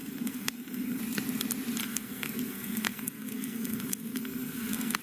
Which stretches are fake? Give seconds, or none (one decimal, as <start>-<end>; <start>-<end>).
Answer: 0.0-1.0; 1.8-5.0